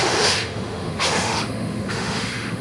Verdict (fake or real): fake